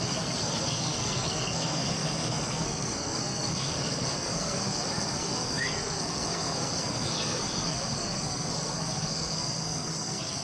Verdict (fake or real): fake